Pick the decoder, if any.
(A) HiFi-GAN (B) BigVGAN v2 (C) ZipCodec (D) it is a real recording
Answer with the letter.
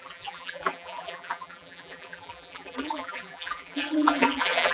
B